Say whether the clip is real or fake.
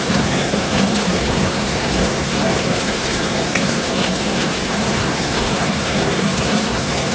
fake